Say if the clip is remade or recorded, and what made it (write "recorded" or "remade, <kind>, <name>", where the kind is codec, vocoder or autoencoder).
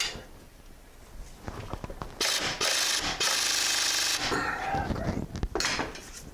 recorded